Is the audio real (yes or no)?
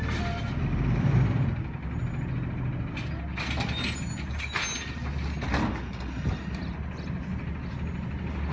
yes